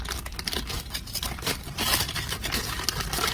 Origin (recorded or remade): recorded